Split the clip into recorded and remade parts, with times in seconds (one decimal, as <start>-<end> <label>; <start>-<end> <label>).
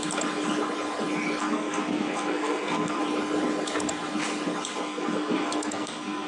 0.0-1.4 recorded; 1.4-3.0 remade; 3.0-4.8 recorded; 4.8-6.3 remade